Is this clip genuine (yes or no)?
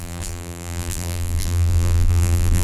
no